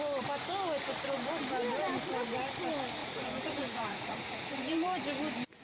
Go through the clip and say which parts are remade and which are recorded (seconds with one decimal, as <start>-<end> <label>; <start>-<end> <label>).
0.0-3.0 recorded; 3.0-5.0 remade; 5.0-5.6 recorded